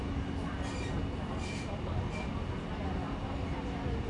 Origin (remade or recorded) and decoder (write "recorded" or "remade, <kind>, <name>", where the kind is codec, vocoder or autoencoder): recorded